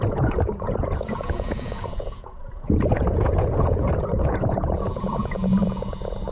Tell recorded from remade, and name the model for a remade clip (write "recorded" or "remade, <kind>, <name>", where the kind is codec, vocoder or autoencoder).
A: remade, vocoder, Vocos